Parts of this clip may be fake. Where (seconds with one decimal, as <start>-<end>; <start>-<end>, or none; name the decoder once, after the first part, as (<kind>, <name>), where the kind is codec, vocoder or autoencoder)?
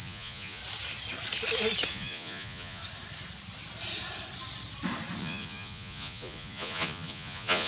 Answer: 0.0-0.6 (vocoder, Vocos); 1.9-2.8; 5.2-7.7